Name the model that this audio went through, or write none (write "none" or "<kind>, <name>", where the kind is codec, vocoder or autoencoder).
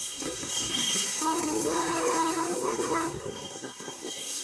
codec, SNAC